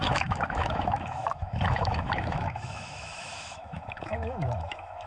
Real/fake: fake